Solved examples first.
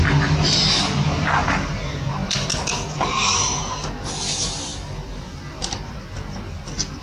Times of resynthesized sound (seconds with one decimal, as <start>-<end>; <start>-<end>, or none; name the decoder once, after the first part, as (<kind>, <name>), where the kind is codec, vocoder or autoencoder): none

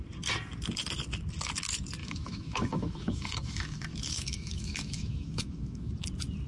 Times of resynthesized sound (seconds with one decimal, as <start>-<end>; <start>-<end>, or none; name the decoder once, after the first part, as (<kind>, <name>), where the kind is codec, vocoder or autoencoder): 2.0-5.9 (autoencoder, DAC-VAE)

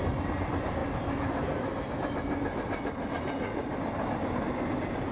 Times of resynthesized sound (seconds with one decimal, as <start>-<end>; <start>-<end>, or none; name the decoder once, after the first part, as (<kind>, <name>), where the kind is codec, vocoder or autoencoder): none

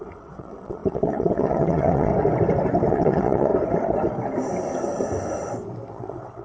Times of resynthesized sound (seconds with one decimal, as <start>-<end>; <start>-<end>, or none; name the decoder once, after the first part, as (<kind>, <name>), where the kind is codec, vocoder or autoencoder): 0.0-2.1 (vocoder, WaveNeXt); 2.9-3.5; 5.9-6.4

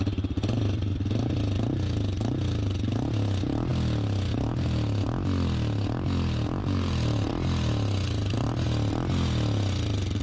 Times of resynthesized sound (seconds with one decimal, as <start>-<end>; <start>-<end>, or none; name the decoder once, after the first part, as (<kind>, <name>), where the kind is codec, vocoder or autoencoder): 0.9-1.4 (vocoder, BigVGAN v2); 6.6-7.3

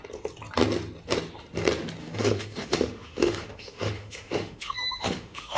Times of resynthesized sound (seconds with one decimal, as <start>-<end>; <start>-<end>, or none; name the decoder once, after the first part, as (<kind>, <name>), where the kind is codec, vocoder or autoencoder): 2.0-5.6 (autoencoder, DAC-VAE)